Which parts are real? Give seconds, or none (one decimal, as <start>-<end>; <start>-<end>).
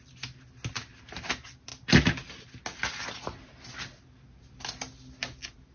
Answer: 0.0-5.7